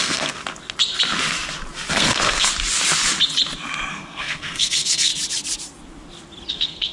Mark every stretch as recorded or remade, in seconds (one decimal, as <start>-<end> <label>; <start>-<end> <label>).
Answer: 0.0-0.4 remade; 0.4-1.9 recorded; 1.9-2.5 remade; 2.5-3.9 recorded; 3.9-5.1 remade; 5.1-6.5 recorded; 6.5-6.9 remade